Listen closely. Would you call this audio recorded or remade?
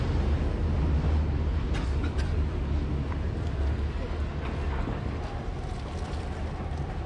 recorded